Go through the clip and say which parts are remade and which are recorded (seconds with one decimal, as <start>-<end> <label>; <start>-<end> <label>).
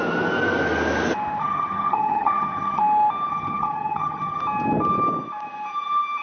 0.0-1.4 recorded; 1.4-2.8 remade; 2.8-3.3 recorded; 3.3-4.4 remade; 4.4-6.2 recorded